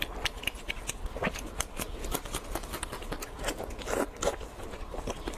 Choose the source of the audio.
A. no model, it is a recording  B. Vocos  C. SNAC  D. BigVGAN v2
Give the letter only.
A